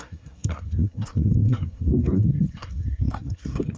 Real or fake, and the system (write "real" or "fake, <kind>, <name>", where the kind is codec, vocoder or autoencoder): fake, codec, SNAC